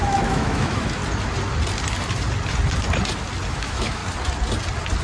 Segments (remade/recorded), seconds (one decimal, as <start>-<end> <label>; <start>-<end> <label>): 0.0-1.0 remade; 1.0-3.5 recorded; 3.5-4.0 remade; 4.0-5.0 recorded